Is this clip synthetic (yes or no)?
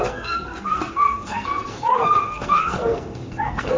yes